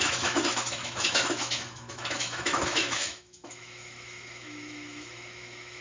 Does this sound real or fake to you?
fake